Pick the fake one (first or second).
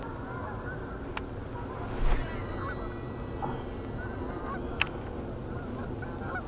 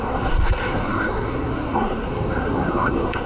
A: second